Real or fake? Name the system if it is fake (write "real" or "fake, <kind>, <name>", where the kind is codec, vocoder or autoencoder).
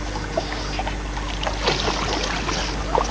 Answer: real